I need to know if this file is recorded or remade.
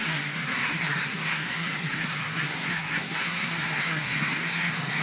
remade